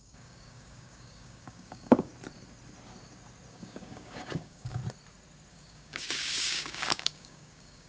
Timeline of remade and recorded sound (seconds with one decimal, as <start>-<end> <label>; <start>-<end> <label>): 0.0-2.1 remade; 2.1-3.5 recorded; 3.5-4.8 remade; 4.8-5.5 recorded; 5.5-7.9 remade